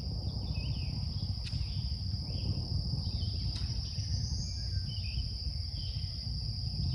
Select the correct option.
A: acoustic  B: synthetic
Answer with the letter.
A